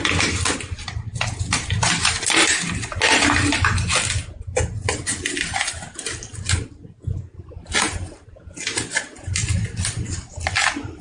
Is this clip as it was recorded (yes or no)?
yes